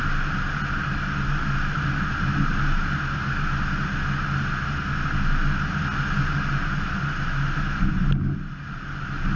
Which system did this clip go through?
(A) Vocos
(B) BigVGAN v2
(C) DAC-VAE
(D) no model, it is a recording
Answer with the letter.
D